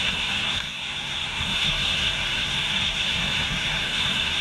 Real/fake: fake